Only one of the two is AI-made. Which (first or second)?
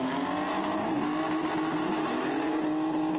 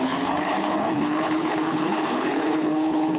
second